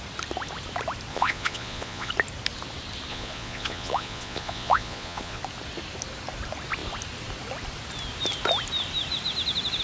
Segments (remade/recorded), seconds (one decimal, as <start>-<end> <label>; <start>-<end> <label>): 0.0-1.1 recorded; 1.1-2.1 remade; 2.1-3.1 recorded; 3.1-5.4 remade; 5.4-9.8 recorded

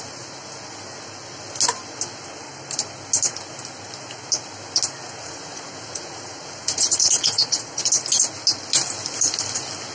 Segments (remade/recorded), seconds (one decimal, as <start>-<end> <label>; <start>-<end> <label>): 0.0-5.2 recorded; 5.2-7.8 remade; 7.8-9.9 recorded

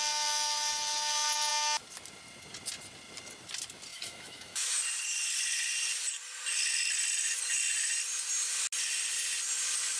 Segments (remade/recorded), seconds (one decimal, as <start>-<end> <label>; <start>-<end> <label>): 0.0-3.9 recorded; 3.9-4.8 remade; 4.8-10.0 recorded

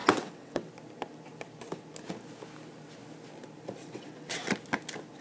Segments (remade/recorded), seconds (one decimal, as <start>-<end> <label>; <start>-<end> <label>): 0.0-0.7 remade; 0.7-3.8 recorded; 3.8-4.5 remade; 4.5-5.2 recorded

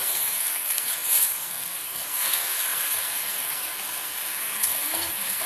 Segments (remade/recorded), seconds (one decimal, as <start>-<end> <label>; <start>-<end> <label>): 0.0-5.5 remade

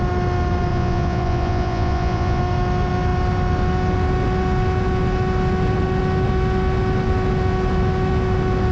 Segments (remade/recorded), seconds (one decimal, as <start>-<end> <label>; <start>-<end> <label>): 0.0-0.7 recorded; 0.7-2.4 remade; 2.4-8.7 recorded

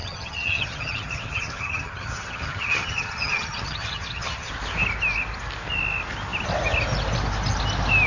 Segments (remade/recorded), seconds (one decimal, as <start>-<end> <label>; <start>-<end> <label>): 0.0-4.5 remade; 4.5-8.1 recorded